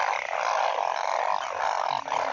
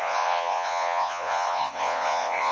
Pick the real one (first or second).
first